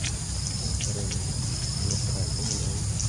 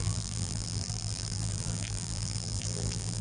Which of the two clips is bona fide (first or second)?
first